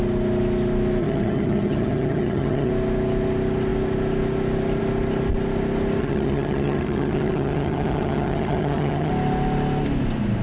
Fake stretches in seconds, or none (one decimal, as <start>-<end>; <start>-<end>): 1.0-2.7; 6.0-9.1